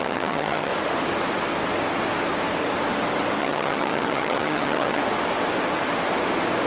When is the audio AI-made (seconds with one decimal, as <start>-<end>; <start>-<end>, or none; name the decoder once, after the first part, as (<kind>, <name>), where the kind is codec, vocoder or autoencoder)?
0.0-0.7 (vocoder, HiFi-GAN); 3.4-5.0